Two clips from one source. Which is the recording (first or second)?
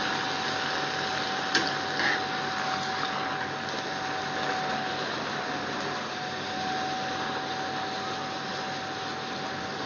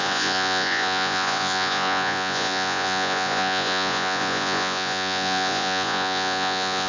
first